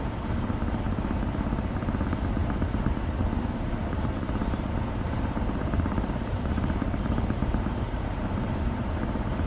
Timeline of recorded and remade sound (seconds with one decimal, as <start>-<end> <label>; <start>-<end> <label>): 0.0-2.4 recorded; 2.4-2.9 remade; 2.9-3.8 recorded; 3.8-8.8 remade; 8.8-9.5 recorded

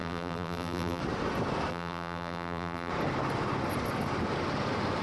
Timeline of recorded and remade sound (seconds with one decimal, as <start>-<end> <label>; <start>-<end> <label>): 0.0-1.0 remade; 1.0-1.7 recorded; 1.7-2.9 remade; 2.9-5.0 recorded

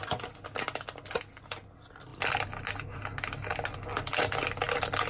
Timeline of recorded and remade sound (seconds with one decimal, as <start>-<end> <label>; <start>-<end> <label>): 0.0-5.1 recorded

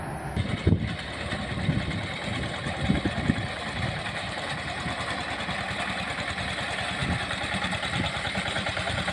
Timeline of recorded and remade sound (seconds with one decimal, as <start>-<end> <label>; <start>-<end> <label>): 0.0-2.3 recorded; 2.3-5.8 remade; 5.8-7.0 recorded; 7.0-9.1 remade

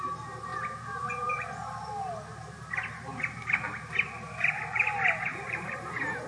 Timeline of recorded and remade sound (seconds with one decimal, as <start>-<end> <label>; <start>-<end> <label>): 0.0-5.3 recorded; 5.3-6.3 remade

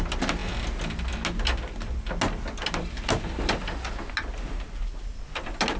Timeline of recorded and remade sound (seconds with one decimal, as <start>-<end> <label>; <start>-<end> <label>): 0.0-5.8 recorded